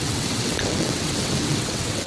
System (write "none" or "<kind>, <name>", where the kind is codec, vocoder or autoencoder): vocoder, WaveNeXt